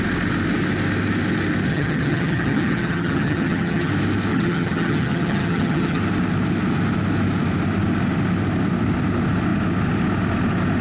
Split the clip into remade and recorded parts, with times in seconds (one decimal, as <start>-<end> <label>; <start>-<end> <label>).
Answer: 0.0-1.7 recorded; 1.7-3.9 remade; 3.9-4.3 recorded; 4.3-6.0 remade; 6.0-10.8 recorded